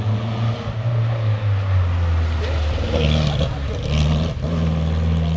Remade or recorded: recorded